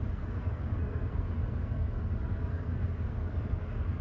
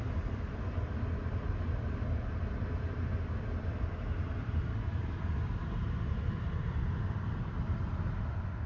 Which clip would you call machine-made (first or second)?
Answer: first